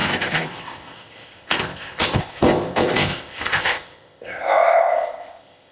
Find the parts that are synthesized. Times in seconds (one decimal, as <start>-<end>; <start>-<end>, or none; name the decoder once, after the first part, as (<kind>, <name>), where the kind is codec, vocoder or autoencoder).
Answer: 0.0-5.7 (codec, ZipCodec)